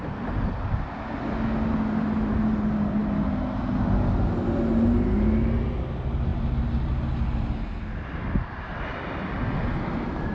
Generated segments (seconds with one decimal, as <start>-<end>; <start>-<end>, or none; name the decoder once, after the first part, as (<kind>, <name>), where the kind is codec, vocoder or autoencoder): none